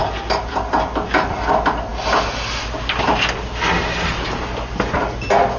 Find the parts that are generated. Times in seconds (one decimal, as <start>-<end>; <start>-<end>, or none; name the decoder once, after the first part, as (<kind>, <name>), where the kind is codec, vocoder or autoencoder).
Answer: none